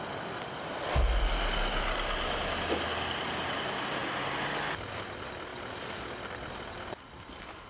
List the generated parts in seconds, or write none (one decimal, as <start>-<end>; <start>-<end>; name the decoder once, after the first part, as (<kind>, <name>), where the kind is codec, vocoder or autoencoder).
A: none